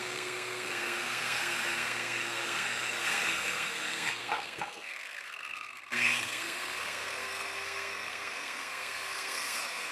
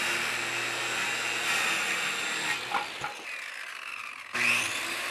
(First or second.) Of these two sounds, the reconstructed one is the first